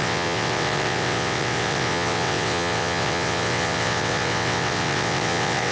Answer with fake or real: fake